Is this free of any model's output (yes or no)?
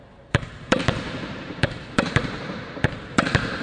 no